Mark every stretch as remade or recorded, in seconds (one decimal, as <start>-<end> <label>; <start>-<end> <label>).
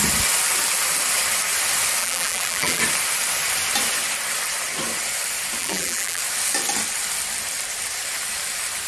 0.0-2.0 recorded; 2.0-2.8 remade; 2.8-5.6 recorded; 5.6-6.2 remade; 6.2-8.9 recorded